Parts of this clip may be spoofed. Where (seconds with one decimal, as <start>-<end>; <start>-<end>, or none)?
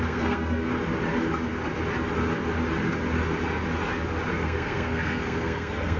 0.0-0.7; 4.3-6.0